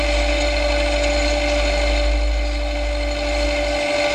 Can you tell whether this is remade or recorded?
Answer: recorded